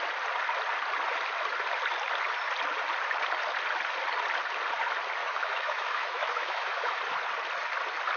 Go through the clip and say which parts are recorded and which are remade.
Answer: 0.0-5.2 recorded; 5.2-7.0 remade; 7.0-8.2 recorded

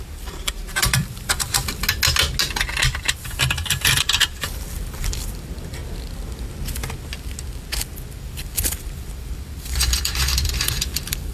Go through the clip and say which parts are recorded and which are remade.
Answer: 0.0-1.8 remade; 1.8-2.8 recorded; 2.8-5.8 remade; 5.8-8.2 recorded; 8.2-11.3 remade

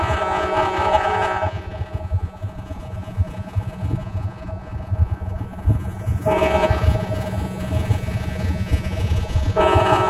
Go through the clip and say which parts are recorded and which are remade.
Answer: 0.0-10.1 remade